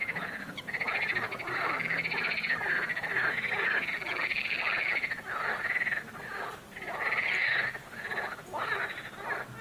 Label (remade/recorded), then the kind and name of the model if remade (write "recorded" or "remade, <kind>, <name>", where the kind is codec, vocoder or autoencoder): recorded